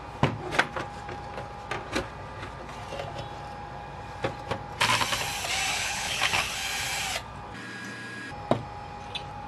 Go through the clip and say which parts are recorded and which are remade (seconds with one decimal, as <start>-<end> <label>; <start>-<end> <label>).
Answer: 0.0-5.7 recorded; 5.7-6.5 remade; 6.5-9.5 recorded